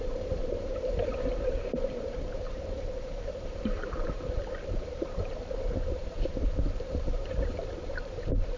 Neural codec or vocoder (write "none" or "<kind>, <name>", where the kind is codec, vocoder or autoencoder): vocoder, BigVGAN v2